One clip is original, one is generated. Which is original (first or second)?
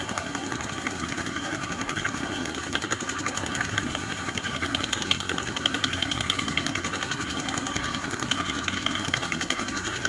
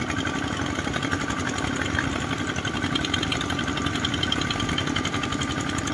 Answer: second